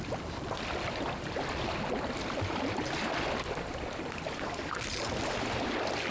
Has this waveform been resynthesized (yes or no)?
no